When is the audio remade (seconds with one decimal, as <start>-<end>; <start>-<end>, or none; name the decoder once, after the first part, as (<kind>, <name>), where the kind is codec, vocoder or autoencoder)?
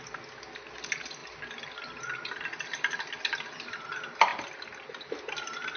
none